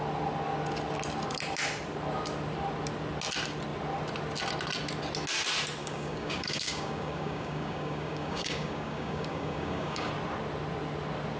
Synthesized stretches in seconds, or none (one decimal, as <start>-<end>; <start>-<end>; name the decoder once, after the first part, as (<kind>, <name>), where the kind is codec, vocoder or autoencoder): 5.8-10.1 (codec, DAC)

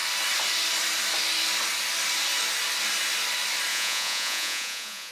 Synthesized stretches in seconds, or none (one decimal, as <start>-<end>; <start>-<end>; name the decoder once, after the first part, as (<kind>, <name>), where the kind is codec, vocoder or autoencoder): 3.7-5.1 (vocoder, Vocos)

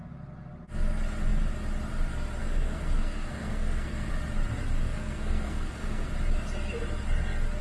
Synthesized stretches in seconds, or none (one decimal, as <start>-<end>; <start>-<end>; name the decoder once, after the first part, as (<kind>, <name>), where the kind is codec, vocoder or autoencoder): 2.4-4.1 (codec, SNAC); 4.8-6.1

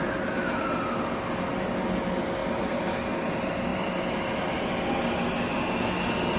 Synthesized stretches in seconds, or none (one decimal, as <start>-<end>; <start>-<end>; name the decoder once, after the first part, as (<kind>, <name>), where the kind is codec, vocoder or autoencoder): none